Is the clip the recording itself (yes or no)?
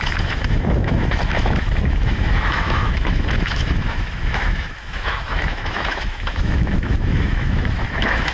no